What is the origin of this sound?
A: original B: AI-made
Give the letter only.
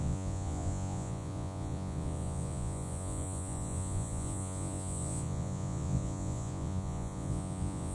B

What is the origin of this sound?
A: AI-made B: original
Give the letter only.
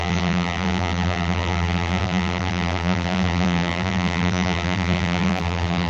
A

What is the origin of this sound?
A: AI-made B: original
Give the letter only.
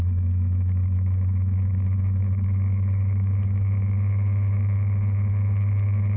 A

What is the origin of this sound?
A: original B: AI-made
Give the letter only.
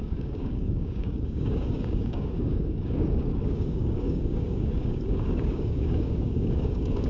B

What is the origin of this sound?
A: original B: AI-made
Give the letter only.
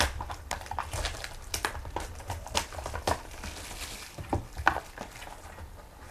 A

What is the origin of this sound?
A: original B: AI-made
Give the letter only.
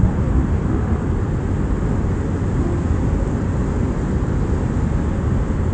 A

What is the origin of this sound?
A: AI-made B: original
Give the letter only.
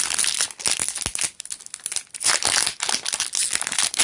B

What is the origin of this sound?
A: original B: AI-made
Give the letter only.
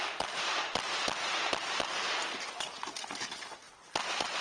A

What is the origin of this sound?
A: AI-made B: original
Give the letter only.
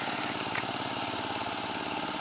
A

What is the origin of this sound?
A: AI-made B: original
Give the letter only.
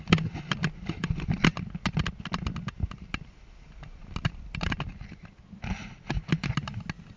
B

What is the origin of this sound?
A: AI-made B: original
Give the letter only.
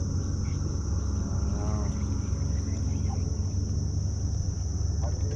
B